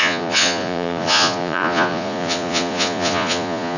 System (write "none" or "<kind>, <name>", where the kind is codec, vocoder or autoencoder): vocoder, Vocos